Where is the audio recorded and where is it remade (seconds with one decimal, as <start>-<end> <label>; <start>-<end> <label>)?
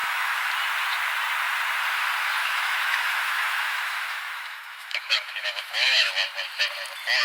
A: 0.0-0.5 remade; 0.5-2.4 recorded; 2.4-6.1 remade; 6.1-7.2 recorded